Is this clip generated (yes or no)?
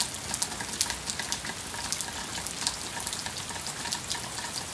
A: no